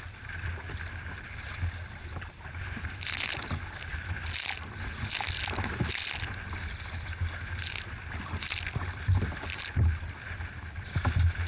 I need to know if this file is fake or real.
real